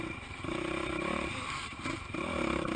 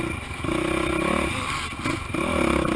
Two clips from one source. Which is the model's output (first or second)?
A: first